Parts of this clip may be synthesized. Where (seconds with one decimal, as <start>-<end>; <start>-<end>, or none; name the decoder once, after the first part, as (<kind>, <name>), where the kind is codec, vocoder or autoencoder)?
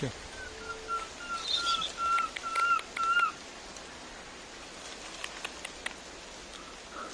none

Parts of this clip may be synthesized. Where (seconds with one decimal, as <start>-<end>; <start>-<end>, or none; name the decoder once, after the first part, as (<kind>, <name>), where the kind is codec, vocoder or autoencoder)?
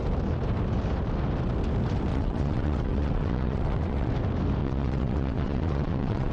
2.1-4.1 (vocoder, WaveNeXt); 4.6-6.3